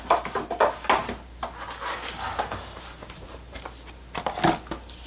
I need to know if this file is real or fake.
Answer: real